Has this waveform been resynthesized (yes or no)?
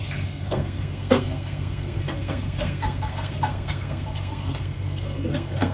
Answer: yes